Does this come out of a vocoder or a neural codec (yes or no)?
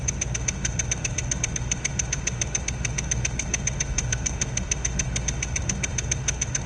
yes